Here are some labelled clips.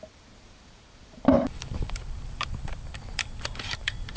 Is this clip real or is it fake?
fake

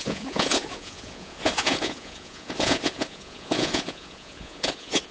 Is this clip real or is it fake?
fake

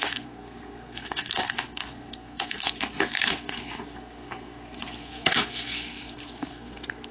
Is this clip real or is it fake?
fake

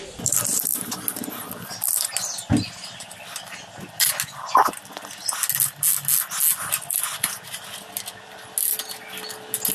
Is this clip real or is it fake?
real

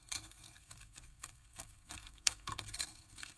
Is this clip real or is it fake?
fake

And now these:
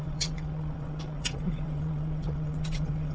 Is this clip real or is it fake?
fake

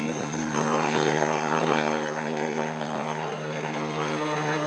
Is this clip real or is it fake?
fake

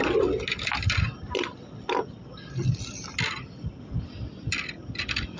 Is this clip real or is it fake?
real